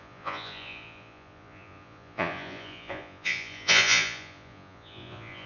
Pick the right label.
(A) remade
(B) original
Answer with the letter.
A